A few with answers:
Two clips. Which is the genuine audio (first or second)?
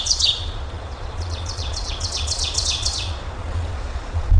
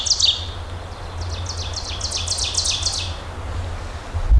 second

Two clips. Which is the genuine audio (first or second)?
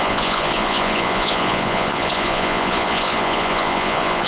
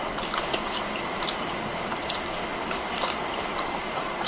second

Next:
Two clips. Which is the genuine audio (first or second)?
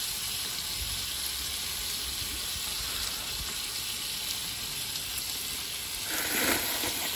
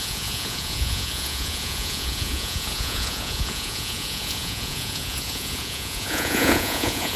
first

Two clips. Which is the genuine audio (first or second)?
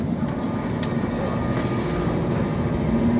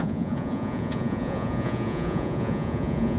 first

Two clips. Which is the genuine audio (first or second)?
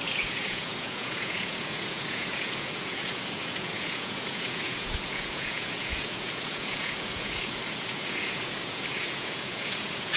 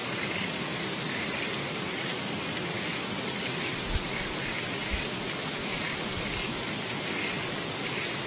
second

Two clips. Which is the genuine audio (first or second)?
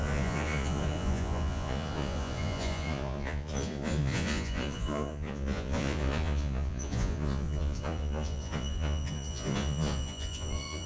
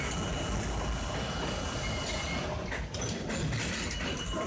second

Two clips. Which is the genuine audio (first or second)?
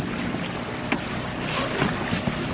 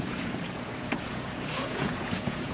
first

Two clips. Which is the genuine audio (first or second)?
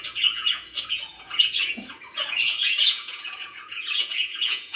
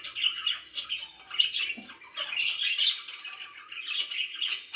second